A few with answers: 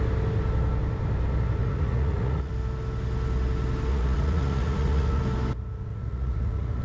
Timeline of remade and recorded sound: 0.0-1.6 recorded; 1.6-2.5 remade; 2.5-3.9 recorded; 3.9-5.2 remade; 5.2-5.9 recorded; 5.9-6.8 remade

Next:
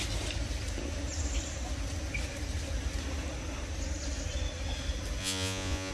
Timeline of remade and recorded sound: 0.0-5.2 recorded; 5.2-5.9 remade

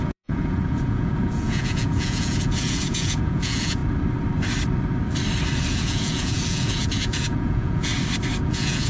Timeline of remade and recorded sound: 0.0-3.8 remade; 3.8-5.7 recorded; 5.7-7.9 remade; 7.9-8.4 recorded; 8.4-8.9 remade

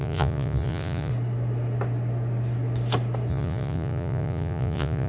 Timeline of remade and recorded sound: 0.0-1.1 remade; 1.1-3.3 recorded; 3.3-5.1 remade